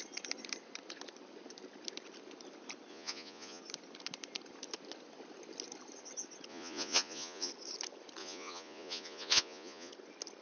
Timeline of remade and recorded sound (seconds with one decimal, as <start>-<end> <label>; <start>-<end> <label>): 0.0-2.9 recorded; 2.9-3.6 remade; 3.6-6.5 recorded; 6.5-7.5 remade; 7.5-8.2 recorded; 8.2-9.9 remade; 9.9-10.4 recorded